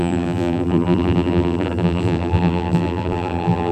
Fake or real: fake